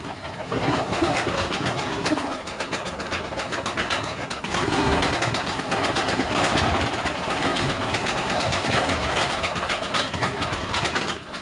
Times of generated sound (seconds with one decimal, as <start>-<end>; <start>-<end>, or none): 0.0-6.5; 7.1-11.4